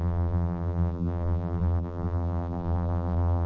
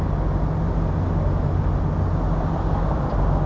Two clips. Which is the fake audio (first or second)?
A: first